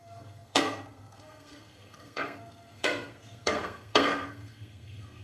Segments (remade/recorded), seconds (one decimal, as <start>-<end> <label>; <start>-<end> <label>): 0.0-5.2 remade